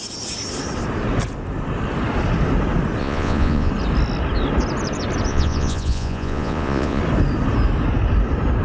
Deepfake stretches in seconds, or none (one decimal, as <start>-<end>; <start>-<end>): 3.0-3.7; 5.3-7.0